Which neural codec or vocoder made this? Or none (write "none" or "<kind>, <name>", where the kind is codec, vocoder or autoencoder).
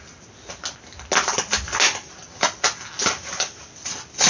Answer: none